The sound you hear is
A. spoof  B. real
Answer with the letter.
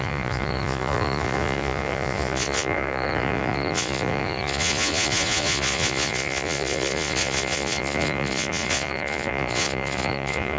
A